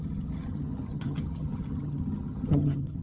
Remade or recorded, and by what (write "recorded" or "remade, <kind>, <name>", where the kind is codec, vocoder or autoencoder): remade, vocoder, HiFi-GAN